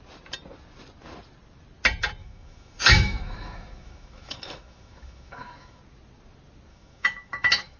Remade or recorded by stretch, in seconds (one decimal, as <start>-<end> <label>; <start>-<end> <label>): 0.0-2.2 recorded; 2.2-5.8 remade; 5.8-6.7 recorded; 6.7-7.8 remade

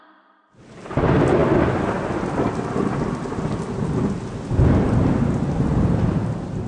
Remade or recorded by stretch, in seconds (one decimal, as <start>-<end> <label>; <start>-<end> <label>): 0.0-6.7 recorded

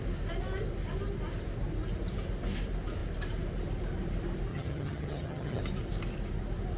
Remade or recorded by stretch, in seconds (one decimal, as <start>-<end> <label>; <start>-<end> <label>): 0.0-4.5 recorded; 4.5-5.6 remade; 5.6-6.8 recorded

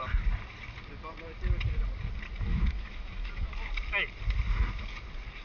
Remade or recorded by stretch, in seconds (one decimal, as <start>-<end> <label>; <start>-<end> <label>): 0.0-2.5 recorded; 2.5-3.5 remade; 3.5-5.4 recorded

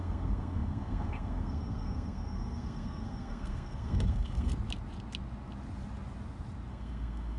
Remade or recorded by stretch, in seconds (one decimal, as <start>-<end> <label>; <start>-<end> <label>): 0.0-4.5 remade; 4.5-6.7 recorded; 6.7-7.4 remade

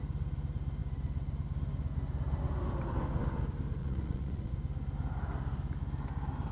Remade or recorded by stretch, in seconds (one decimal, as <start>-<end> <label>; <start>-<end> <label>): 0.0-3.8 recorded; 3.8-4.5 remade; 4.5-6.5 recorded